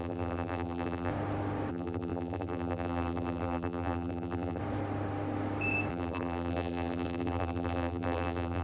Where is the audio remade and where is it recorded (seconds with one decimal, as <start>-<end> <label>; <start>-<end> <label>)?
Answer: 0.0-1.1 remade; 1.1-1.7 recorded; 1.7-4.6 remade; 4.6-5.9 recorded; 5.9-8.6 remade